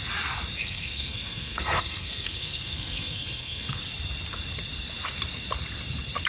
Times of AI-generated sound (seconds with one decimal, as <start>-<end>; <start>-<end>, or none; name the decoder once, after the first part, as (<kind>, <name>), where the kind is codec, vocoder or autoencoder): 0.6-3.8 (codec, SNAC)